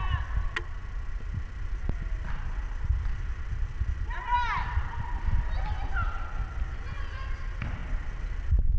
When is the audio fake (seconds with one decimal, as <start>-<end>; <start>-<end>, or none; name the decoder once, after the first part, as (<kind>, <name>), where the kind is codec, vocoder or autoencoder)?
none